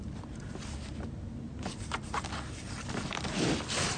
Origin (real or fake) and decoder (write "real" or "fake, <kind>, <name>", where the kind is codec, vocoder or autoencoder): real